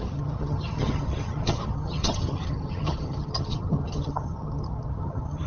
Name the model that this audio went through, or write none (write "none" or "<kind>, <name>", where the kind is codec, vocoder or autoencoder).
vocoder, HiFi-GAN